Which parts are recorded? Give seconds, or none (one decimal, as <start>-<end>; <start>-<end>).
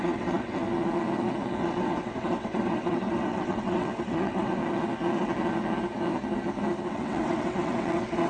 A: 0.6-1.6; 4.6-6.9